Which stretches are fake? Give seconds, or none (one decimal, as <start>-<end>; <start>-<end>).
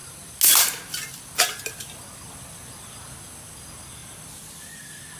none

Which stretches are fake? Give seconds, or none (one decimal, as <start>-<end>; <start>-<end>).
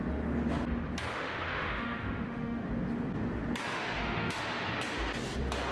1.1-2.7; 3.7-4.4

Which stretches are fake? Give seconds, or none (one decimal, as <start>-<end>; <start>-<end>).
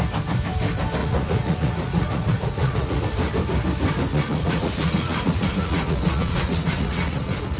1.0-3.0; 4.1-7.6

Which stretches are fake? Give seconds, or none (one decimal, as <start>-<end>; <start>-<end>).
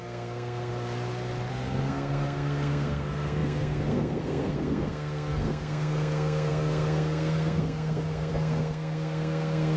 0.0-0.7; 1.5-9.8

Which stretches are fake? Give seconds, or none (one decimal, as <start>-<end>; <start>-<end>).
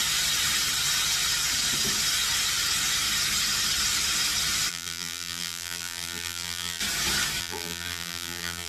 4.7-6.8; 7.4-8.7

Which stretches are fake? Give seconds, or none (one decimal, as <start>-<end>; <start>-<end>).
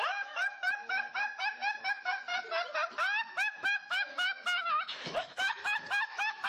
0.0-2.3; 3.0-6.5